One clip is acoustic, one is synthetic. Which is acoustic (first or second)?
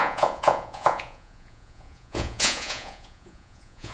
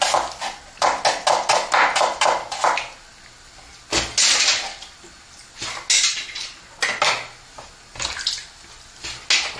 second